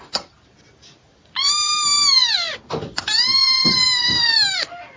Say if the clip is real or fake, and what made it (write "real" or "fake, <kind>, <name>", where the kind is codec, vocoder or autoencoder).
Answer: real